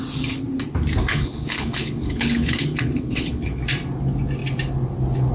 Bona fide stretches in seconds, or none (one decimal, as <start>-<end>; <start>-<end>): 0.0-1.1; 3.6-5.3